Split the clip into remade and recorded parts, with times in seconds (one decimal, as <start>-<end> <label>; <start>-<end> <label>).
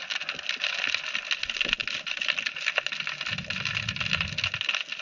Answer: 0.0-5.0 recorded